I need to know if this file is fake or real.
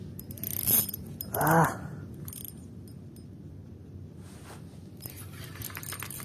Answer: real